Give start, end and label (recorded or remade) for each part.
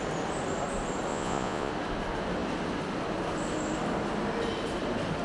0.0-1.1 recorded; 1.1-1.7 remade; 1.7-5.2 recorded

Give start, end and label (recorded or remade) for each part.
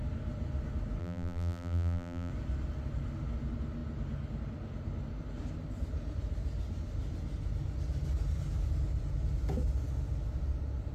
0.0-1.0 recorded; 1.0-2.3 remade; 2.3-10.9 recorded